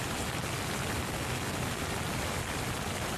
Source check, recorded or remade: recorded